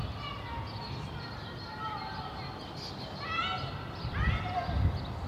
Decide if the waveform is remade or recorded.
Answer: recorded